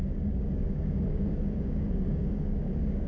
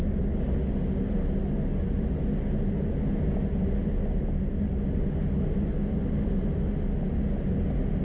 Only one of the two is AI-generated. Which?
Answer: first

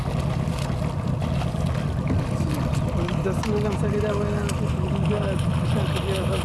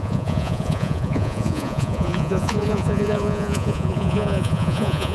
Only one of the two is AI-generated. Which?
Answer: second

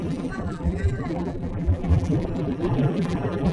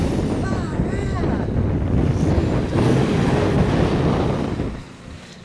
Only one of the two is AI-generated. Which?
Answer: first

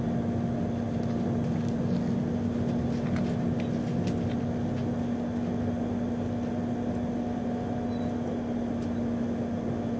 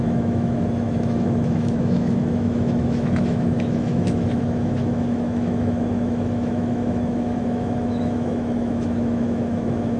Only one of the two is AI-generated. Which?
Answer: second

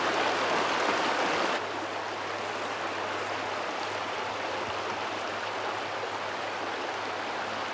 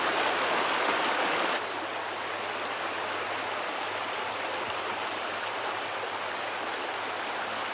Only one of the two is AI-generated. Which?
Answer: second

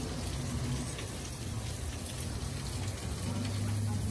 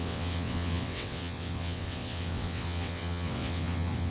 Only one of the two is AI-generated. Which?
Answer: second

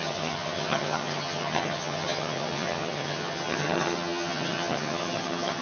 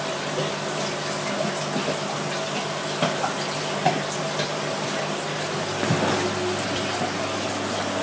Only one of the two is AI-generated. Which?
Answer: first